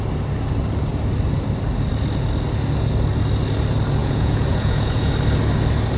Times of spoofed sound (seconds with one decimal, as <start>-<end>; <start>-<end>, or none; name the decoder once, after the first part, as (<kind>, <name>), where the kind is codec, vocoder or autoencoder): 4.0-5.1 (vocoder, Vocos)